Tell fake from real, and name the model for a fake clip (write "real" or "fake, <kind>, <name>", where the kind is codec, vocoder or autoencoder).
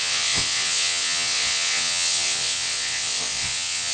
fake, vocoder, WaveNeXt